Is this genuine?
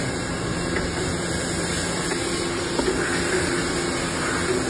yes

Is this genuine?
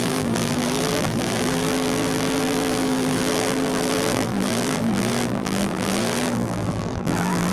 no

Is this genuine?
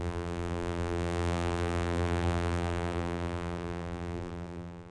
no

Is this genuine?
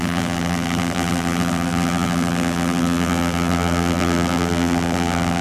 no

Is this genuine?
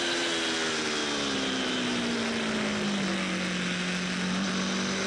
yes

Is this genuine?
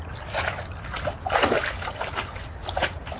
no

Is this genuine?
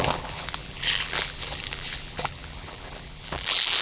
no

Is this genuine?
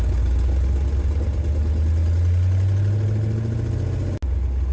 yes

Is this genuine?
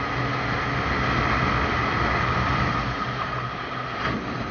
yes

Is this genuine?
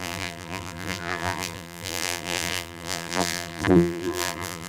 no